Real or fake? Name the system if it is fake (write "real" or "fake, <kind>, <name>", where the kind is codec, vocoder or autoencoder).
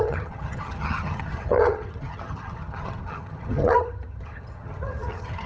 fake, vocoder, HiFi-GAN